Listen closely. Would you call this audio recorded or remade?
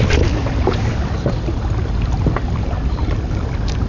recorded